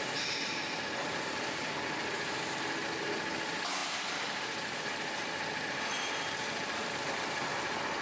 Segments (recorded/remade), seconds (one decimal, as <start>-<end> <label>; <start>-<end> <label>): 0.0-3.8 recorded; 3.8-6.9 remade; 6.9-8.0 recorded